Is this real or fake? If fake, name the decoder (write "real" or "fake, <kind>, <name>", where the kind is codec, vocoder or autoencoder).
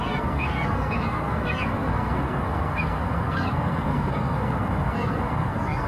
fake, codec, SNAC